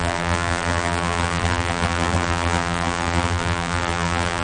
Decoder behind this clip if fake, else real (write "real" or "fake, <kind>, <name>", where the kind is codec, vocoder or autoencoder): fake, vocoder, BigVGAN v2